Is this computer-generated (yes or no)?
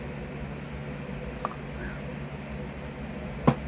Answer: no